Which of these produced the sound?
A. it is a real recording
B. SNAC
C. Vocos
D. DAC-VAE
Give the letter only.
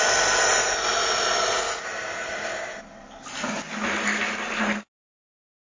A